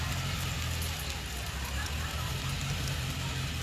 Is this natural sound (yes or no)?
yes